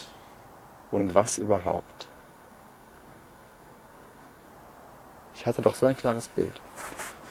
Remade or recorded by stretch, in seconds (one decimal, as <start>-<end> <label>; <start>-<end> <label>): 0.0-1.0 recorded; 1.0-4.5 remade; 4.5-5.7 recorded; 5.7-6.6 remade; 6.6-7.3 recorded